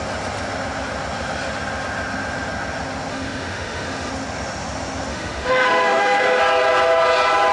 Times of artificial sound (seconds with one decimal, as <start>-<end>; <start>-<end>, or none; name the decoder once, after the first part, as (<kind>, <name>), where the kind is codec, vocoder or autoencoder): 3.1-4.1 (autoencoder, DAC-VAE); 5.1-6.4